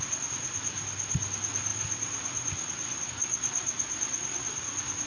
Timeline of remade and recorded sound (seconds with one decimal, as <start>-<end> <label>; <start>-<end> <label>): 0.0-5.1 recorded